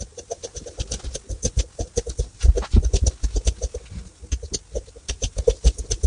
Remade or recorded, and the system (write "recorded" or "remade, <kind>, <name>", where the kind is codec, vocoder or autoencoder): recorded